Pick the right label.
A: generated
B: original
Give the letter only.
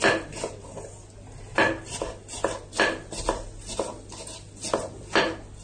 B